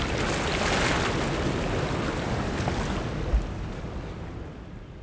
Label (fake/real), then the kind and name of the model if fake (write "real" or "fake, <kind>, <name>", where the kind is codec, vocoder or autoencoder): real